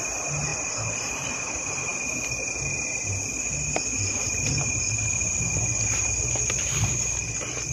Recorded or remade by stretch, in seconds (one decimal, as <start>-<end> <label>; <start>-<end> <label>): 0.0-7.7 recorded